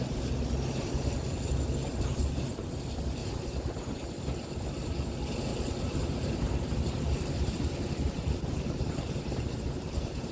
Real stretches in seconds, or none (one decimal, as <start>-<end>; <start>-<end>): 0.0-2.1; 2.8-3.2; 4.0-5.5